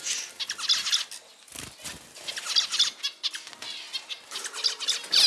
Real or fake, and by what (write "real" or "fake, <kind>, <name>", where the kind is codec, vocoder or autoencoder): real